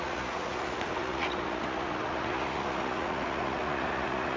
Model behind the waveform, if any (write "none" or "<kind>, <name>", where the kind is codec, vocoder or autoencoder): vocoder, Vocos